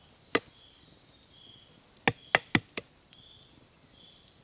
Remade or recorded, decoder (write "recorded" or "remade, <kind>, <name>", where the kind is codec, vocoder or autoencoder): recorded